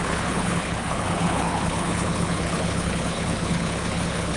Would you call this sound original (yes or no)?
no